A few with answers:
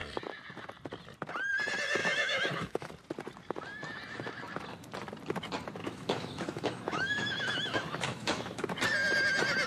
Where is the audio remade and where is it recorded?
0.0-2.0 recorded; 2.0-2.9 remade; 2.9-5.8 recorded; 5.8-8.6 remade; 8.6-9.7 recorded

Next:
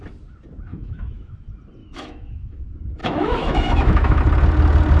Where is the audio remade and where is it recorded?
0.0-0.7 recorded; 0.7-1.4 remade; 1.4-1.8 recorded; 1.8-2.6 remade; 2.6-3.0 recorded; 3.0-4.2 remade; 4.2-5.0 recorded

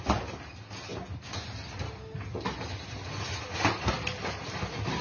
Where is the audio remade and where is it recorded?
0.0-5.0 recorded

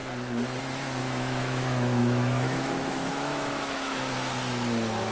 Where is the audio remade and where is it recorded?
0.0-1.0 recorded; 1.0-4.1 remade; 4.1-5.1 recorded

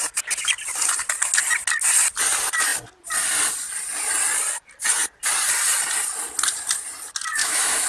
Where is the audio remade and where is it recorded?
0.0-7.4 recorded; 7.4-7.9 remade

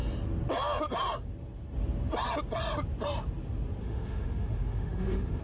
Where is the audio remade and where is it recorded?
0.0-3.8 recorded; 3.8-5.4 remade

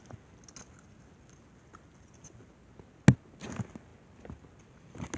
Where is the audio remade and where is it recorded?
0.0-5.2 recorded

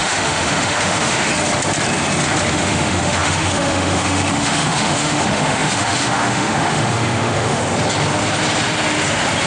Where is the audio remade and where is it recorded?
0.0-1.3 remade; 1.3-2.5 recorded; 2.5-7.6 remade; 7.6-9.5 recorded